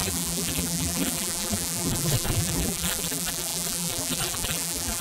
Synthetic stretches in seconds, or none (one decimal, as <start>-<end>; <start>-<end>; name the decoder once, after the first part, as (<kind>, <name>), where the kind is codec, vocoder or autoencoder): 0.0-5.0 (vocoder, BigVGAN v2)